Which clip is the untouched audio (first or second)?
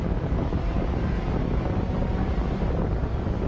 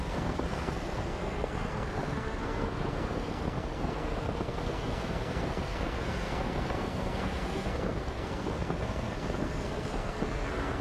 first